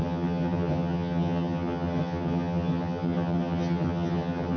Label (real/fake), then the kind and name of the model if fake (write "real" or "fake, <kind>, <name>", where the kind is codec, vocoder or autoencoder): fake, vocoder, HiFi-GAN